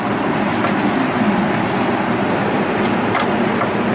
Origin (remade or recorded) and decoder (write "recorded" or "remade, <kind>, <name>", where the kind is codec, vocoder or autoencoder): recorded